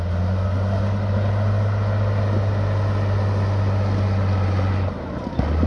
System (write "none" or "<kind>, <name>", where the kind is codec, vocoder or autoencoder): none